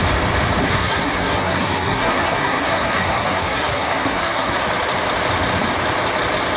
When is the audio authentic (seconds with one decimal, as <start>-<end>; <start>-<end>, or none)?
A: 0.0-0.6; 4.6-6.6